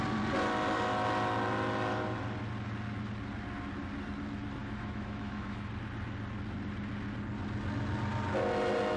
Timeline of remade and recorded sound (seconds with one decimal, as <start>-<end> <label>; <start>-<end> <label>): 0.0-4.6 recorded; 4.6-5.7 remade; 5.7-9.0 recorded